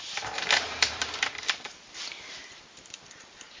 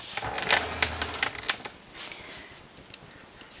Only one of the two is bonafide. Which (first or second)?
second